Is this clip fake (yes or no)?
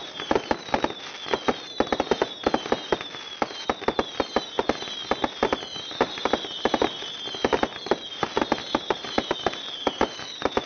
no